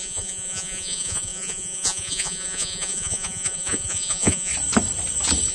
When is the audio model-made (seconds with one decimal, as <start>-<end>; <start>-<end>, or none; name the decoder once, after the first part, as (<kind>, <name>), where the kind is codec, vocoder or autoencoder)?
0.0-4.5 (vocoder, Vocos)